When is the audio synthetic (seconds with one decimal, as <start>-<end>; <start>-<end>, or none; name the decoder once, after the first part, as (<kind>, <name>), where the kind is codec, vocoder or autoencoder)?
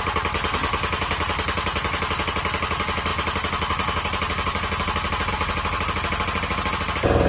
none